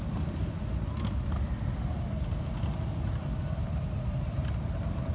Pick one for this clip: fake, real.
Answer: real